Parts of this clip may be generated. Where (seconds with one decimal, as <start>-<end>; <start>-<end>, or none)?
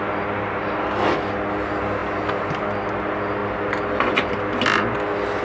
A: none